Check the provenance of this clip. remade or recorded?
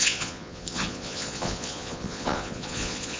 remade